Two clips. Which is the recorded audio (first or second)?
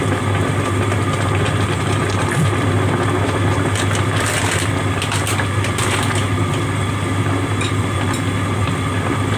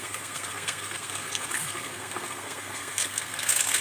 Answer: first